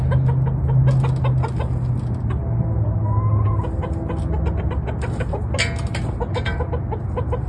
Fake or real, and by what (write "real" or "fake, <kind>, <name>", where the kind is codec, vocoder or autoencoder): real